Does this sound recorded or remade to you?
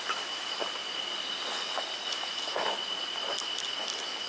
recorded